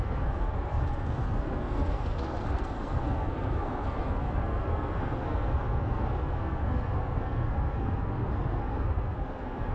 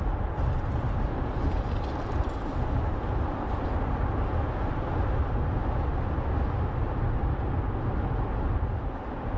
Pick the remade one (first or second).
first